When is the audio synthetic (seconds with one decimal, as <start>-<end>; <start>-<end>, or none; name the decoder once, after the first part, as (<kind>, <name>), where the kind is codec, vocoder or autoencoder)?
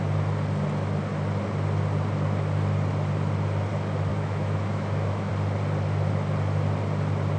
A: 4.1-5.3 (autoencoder, DAC-VAE)